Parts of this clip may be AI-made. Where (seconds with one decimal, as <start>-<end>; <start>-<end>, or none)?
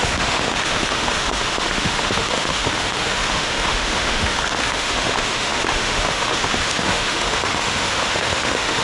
0.0-8.8